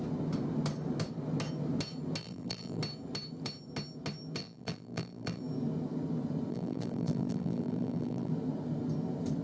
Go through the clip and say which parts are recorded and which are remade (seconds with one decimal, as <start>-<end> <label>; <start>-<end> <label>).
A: 0.0-2.2 recorded; 2.2-2.8 remade; 2.8-4.4 recorded; 4.4-5.4 remade; 5.4-6.5 recorded; 6.5-8.3 remade; 8.3-9.4 recorded